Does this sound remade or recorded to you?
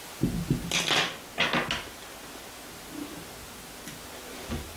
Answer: recorded